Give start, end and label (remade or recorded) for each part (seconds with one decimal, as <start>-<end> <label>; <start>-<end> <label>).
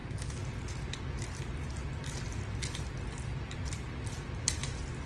0.0-5.1 recorded